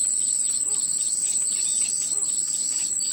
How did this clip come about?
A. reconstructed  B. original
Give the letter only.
B